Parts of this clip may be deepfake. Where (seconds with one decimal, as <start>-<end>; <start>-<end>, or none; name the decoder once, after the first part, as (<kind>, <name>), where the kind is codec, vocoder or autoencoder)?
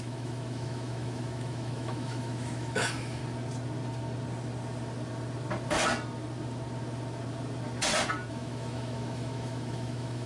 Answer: 0.0-3.2 (autoencoder, DAC-VAE); 8.3-10.3